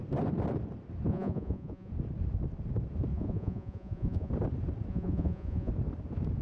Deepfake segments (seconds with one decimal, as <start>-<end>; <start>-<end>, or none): 1.1-1.9; 3.1-4.3; 4.9-5.7